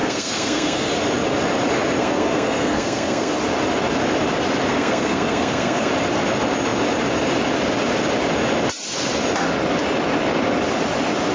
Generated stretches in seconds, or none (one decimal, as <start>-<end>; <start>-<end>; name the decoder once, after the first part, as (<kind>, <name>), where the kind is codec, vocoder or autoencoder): 0.0-0.9 (codec, SNAC); 2.0-3.3; 4.7-5.9